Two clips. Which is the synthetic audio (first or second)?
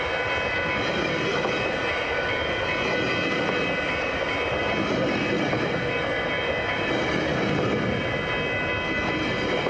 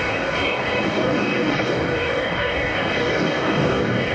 second